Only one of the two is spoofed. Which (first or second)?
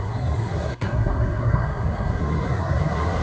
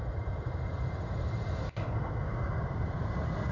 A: first